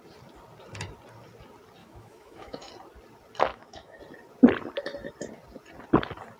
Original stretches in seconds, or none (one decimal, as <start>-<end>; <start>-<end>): 0.0-1.8; 2.7-3.5; 4.0-6.4